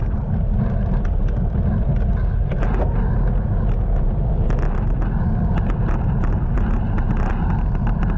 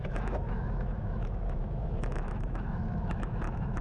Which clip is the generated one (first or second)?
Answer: second